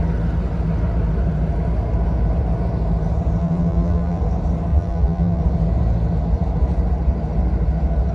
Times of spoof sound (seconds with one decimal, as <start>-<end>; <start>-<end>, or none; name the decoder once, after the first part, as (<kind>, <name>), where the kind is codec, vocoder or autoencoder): 3.4-4.2 (vocoder, BigVGAN v2); 4.7-5.4